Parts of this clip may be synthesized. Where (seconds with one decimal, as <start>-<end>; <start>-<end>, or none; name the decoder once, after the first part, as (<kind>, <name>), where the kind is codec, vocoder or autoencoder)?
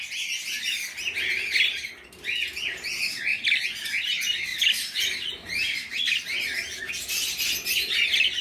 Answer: none